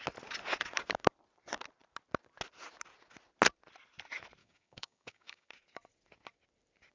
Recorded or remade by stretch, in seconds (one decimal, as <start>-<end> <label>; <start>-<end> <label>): 0.0-4.4 recorded; 4.4-5.5 remade; 5.5-6.9 recorded